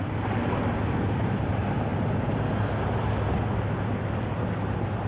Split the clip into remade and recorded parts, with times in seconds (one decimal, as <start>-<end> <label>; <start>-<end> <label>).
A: 0.0-5.1 recorded